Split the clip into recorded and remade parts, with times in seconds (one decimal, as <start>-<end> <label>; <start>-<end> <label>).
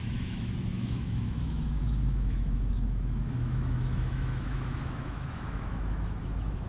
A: 0.0-6.7 remade